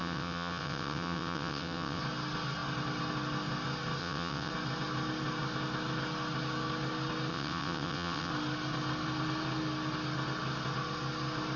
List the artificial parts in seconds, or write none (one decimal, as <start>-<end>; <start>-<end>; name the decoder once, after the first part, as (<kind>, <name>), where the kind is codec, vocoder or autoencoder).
0.0-2.0 (vocoder, WaveNeXt); 4.0-4.5; 7.3-8.3